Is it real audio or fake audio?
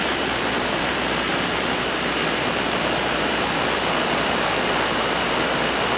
real